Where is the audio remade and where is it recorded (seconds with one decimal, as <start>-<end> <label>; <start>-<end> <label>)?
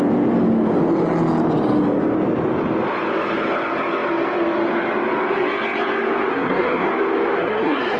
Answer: 0.0-6.3 recorded; 6.3-6.9 remade; 6.9-7.4 recorded; 7.4-8.0 remade